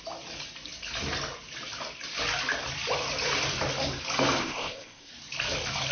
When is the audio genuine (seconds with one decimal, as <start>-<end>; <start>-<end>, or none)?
0.0-4.4; 5.1-5.9